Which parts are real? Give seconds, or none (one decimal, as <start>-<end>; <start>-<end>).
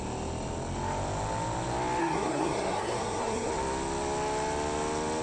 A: 0.0-2.0; 3.5-5.2